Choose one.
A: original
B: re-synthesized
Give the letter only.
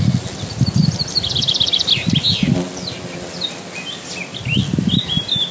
A